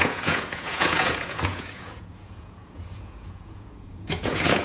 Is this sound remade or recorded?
remade